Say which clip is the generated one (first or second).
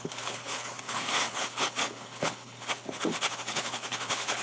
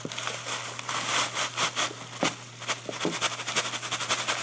first